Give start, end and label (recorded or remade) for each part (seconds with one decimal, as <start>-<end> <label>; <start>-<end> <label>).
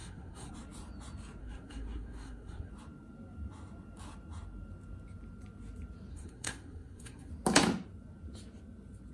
0.0-0.5 remade; 0.5-1.4 recorded; 1.4-2.7 remade; 2.7-6.1 recorded; 6.1-7.3 remade; 7.3-9.1 recorded